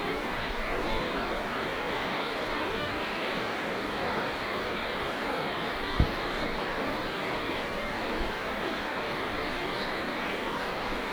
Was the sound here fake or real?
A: fake